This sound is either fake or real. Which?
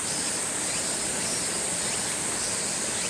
real